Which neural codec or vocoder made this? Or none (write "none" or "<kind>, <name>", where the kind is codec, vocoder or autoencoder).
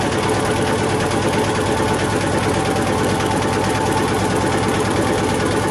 none